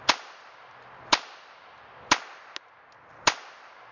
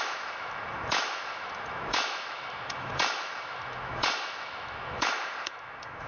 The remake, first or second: second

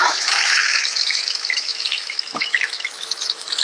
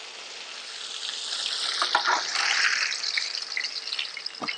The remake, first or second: first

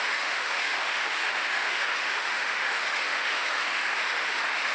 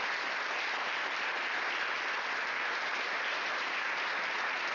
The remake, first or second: first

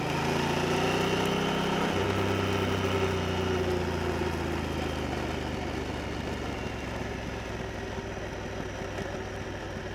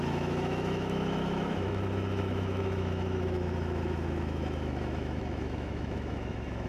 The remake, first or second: second